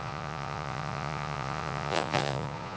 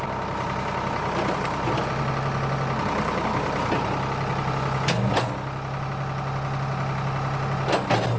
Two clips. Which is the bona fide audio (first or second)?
second